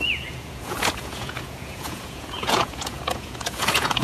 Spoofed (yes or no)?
yes